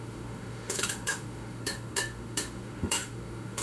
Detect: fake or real fake